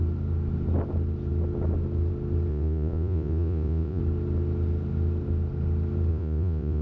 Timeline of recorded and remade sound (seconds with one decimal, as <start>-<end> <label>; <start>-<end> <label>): 0.0-2.5 recorded; 2.5-4.0 remade; 4.0-6.1 recorded; 6.1-6.8 remade